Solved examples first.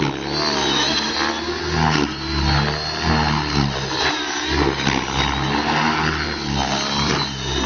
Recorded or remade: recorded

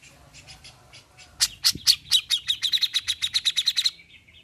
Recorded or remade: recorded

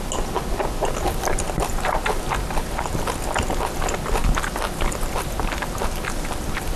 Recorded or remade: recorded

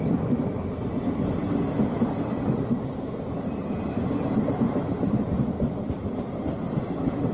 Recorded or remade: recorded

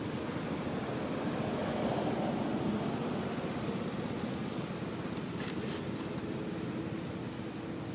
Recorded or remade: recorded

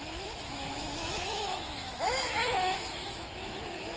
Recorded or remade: remade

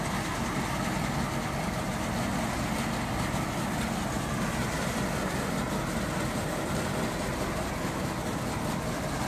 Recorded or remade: recorded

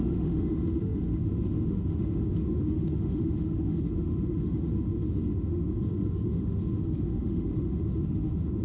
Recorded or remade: remade